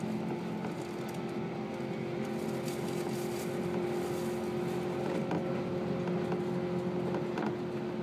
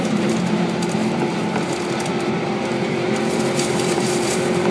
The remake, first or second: second